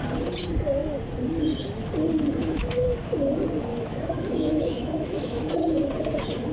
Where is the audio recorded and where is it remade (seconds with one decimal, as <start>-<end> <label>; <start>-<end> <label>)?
0.0-2.4 recorded; 2.4-3.1 remade; 3.1-3.7 recorded; 3.7-5.5 remade; 5.5-6.5 recorded